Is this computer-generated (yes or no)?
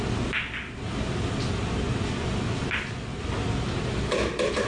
no